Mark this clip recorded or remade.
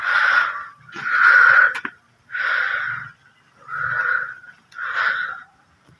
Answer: recorded